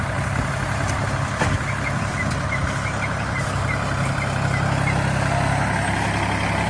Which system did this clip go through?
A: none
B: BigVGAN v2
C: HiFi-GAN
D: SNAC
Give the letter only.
A